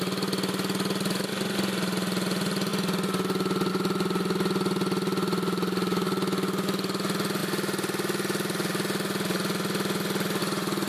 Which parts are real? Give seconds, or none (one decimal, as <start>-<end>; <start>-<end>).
0.0-10.9